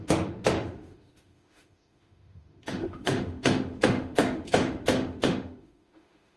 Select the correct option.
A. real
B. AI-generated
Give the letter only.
B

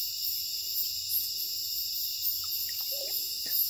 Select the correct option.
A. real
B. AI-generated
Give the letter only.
A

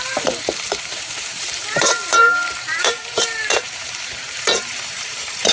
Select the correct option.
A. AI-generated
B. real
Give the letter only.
A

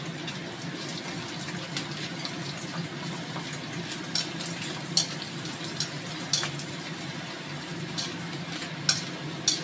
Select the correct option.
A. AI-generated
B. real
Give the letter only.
B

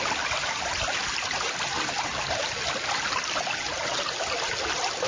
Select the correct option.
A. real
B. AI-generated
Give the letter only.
A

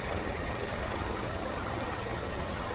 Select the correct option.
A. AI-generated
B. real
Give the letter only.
A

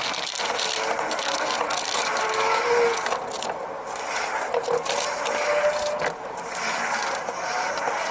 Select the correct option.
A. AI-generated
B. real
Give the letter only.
B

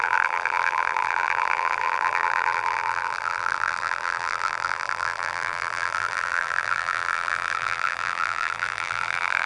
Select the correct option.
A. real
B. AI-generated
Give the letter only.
B